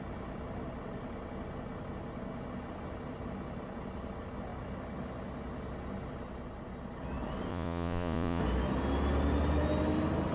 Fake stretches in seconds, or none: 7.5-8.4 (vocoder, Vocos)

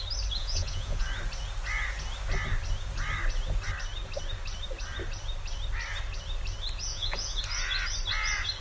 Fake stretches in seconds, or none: 0.4-1.0 (vocoder, Vocos); 6.9-7.4

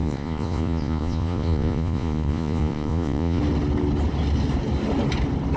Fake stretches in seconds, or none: 0.0-3.4 (vocoder, Vocos)

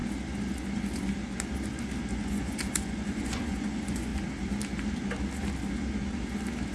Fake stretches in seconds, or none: 2.1-4.1 (vocoder, Vocos)

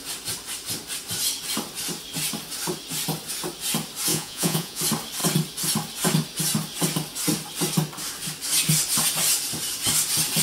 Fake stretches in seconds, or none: 4.1-4.8 (vocoder, Vocos)

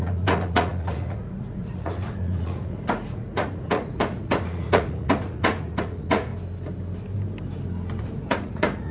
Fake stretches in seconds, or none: 0.0-6.3 (vocoder, Vocos); 8.0-8.9

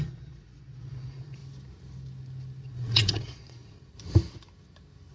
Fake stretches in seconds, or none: 0.0-1.4 (vocoder, Vocos); 2.6-3.9